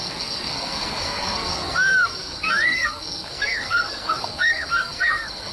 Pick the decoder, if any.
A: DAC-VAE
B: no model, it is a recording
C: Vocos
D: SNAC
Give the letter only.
D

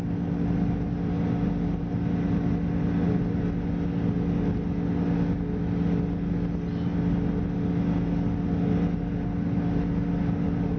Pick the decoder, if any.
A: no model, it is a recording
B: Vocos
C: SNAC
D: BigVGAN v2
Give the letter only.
A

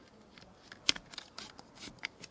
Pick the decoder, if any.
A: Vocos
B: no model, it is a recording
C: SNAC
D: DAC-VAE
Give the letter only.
B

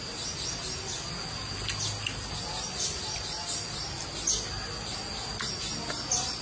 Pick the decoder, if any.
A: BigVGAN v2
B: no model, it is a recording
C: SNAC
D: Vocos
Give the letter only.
B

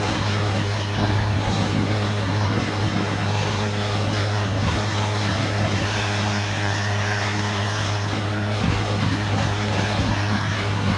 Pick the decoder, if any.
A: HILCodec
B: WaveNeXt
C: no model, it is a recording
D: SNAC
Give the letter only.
D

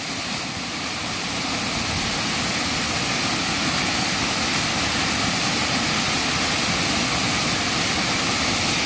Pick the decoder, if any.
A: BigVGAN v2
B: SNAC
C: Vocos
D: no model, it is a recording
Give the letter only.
D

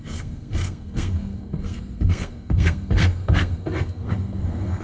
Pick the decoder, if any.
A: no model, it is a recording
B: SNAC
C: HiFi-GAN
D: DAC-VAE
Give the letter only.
B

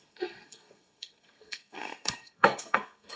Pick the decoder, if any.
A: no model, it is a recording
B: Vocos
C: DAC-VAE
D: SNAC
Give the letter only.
D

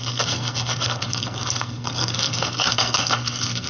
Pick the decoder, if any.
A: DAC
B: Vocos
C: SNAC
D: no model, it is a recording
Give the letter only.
C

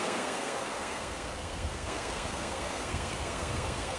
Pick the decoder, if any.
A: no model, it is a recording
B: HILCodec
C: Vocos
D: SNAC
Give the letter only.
D